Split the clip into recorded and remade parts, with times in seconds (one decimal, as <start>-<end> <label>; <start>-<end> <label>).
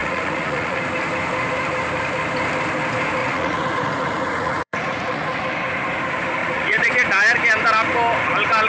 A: 0.0-0.8 remade; 0.8-3.2 recorded; 3.2-5.4 remade; 5.4-6.4 recorded; 6.4-6.9 remade; 6.9-8.7 recorded